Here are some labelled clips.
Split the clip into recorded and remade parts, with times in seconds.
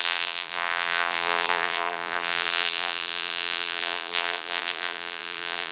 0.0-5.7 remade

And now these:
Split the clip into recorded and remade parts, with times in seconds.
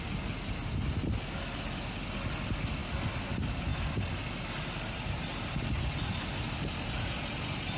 0.0-7.8 recorded